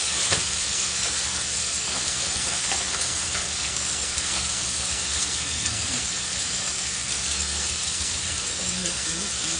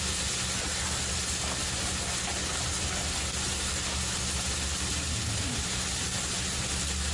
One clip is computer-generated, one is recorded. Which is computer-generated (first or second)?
first